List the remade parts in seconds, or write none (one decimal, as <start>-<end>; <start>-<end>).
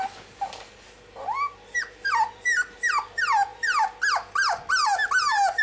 none